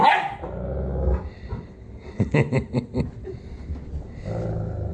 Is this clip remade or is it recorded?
recorded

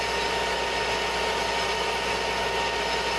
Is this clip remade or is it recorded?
recorded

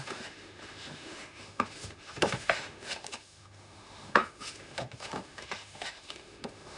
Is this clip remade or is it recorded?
remade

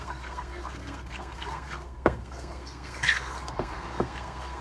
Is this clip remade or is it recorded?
remade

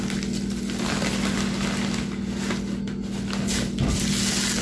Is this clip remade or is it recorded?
recorded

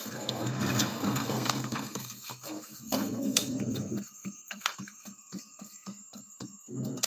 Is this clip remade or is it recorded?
remade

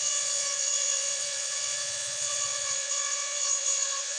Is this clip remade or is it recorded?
remade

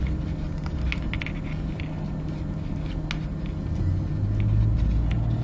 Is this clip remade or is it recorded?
recorded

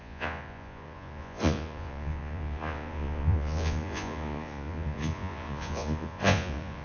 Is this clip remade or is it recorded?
remade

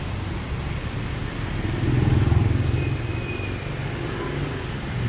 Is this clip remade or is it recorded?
recorded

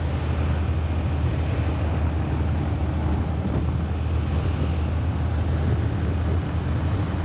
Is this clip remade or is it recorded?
recorded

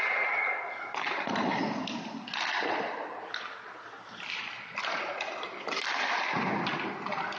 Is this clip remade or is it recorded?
recorded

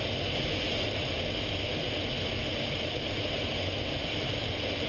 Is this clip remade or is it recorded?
recorded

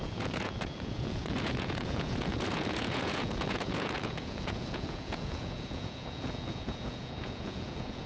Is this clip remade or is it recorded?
remade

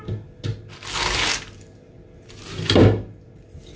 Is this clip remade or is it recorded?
recorded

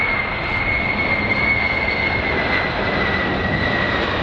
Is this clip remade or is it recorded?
recorded